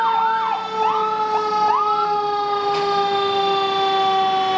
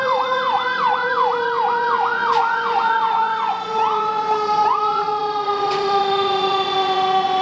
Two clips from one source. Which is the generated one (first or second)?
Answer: second